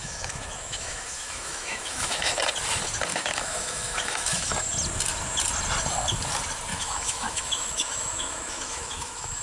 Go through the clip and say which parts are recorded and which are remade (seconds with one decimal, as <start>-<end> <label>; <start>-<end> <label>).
0.0-2.4 remade; 2.4-3.1 recorded; 3.1-4.5 remade; 4.5-6.7 recorded; 6.7-9.4 remade